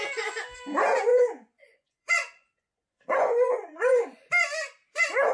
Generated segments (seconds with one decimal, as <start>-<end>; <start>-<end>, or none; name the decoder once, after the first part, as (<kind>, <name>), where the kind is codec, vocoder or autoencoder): 1.1-4.3 (vocoder, Vocos)